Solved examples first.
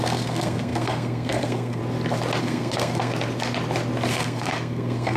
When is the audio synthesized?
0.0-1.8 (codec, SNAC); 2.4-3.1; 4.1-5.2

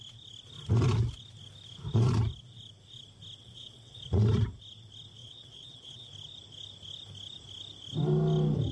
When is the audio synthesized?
3.4-4.0 (vocoder, WaveNeXt); 5.2-6.1

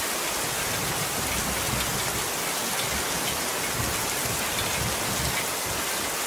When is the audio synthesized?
none

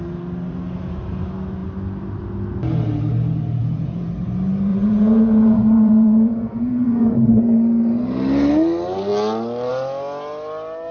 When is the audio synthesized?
3.6-4.1 (vocoder, Vocos); 4.7-7.3

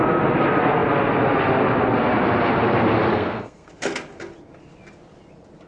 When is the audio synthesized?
3.1-3.7 (codec, SNAC)

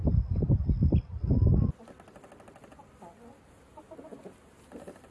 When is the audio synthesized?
none

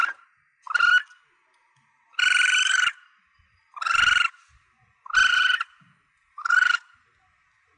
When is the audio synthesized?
5.3-6.1 (vocoder, BigVGAN v2)